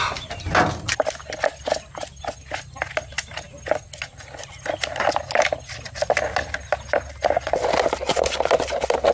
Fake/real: real